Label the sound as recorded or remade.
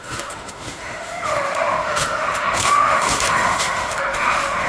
remade